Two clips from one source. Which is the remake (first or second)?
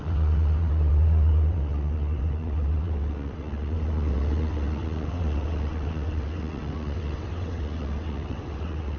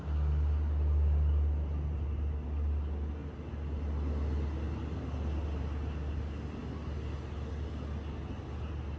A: first